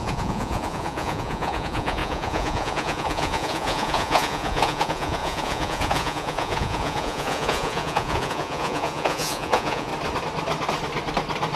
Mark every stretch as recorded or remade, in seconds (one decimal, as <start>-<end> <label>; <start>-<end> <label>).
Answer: 0.0-9.9 remade; 9.9-11.6 recorded